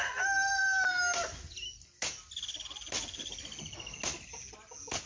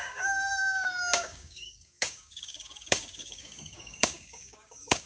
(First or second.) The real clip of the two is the first